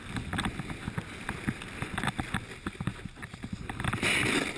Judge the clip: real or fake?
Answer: real